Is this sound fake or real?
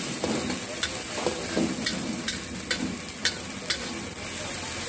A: real